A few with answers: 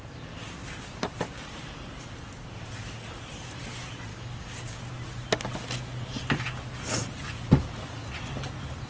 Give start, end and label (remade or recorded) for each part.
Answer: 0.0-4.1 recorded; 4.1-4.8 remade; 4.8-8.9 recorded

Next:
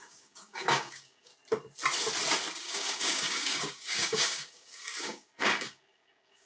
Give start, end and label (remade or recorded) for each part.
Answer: 0.0-1.3 remade; 1.3-2.6 recorded; 2.6-6.5 remade

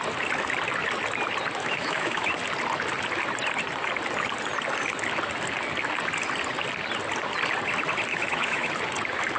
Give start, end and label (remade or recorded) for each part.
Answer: 0.0-1.6 recorded; 1.6-2.4 remade; 2.4-8.1 recorded; 8.1-8.7 remade; 8.7-9.4 recorded

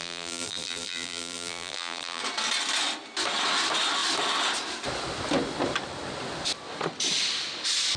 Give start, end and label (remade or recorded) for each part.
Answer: 0.0-2.2 remade; 2.2-8.0 recorded

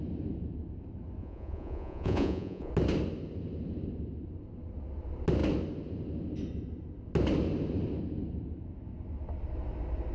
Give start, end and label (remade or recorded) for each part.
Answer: 0.0-1.2 recorded; 1.2-2.7 remade; 2.7-10.1 recorded

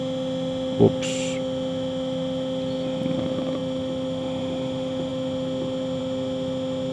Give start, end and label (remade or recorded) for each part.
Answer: 0.0-6.9 recorded

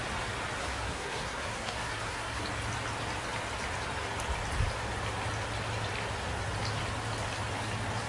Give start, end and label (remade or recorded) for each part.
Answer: 0.0-0.6 recorded; 0.6-2.4 remade; 2.4-8.1 recorded